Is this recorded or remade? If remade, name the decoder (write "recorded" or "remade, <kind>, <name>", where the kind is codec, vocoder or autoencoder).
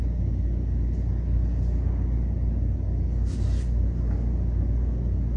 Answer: recorded